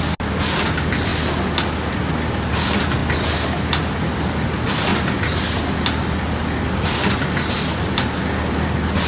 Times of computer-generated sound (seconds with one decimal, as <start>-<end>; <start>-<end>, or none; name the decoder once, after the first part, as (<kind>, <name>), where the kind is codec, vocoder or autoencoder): none